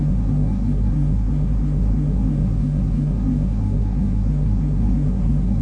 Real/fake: fake